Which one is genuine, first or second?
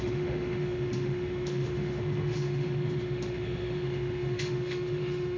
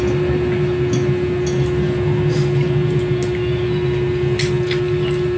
second